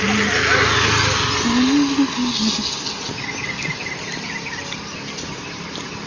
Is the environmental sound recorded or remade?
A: recorded